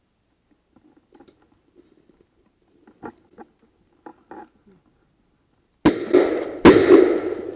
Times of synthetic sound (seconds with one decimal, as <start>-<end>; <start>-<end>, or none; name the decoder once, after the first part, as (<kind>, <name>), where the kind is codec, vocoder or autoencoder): none